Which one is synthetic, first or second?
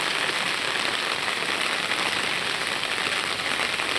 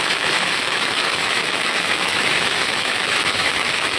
second